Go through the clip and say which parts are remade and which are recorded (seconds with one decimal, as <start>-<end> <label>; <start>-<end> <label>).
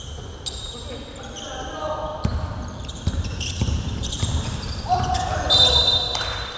0.0-2.1 recorded; 2.1-4.1 remade; 4.1-6.6 recorded